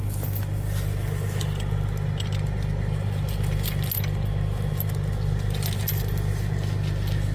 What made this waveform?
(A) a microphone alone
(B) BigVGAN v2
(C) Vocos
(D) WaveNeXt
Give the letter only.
A